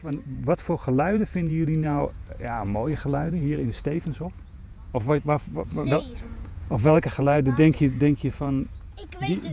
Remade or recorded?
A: remade